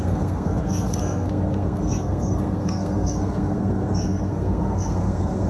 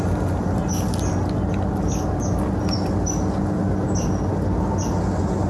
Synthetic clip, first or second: first